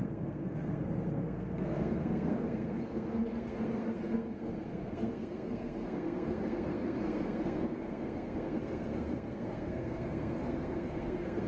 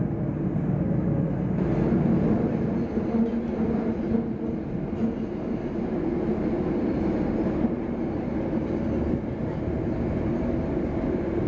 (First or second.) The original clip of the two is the second